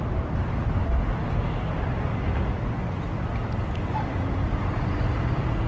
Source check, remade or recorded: recorded